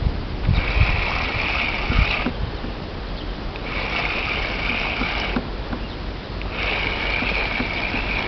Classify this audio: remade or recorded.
recorded